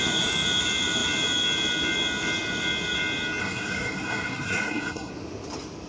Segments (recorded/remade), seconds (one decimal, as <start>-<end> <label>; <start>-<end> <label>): 0.0-3.4 recorded; 3.4-5.1 remade; 5.1-5.9 recorded